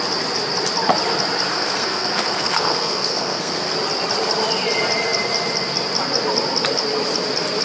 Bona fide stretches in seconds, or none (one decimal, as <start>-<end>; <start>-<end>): 0.0-1.5; 3.7-7.6